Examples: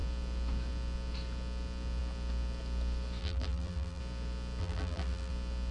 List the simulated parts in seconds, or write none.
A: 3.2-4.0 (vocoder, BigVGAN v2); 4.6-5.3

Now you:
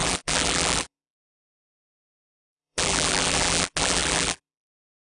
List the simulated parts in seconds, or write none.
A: 0.0-5.2 (vocoder, BigVGAN v2)

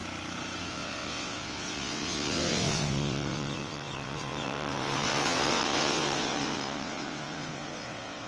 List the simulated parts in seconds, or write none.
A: 0.6-8.3 (vocoder, WaveNeXt)

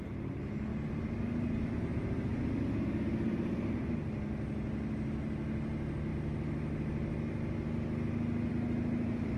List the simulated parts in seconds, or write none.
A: none

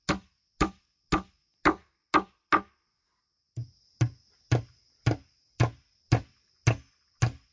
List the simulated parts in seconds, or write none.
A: none

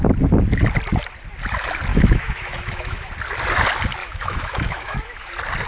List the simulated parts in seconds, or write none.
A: 1.9-3.1 (autoencoder, DAC-VAE); 4.0-5.3

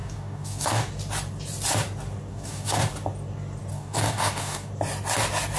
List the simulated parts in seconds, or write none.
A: 0.0-0.9 (codec, DAC); 2.3-2.9; 3.7-4.7